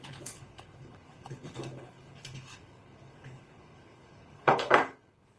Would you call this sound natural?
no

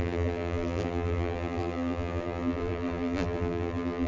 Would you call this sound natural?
no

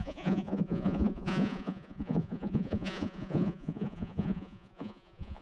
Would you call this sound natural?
no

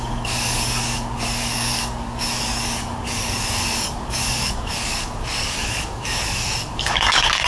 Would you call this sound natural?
no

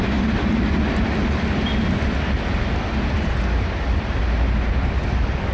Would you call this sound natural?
yes